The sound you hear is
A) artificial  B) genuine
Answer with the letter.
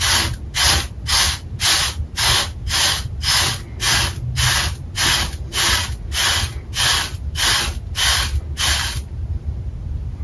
B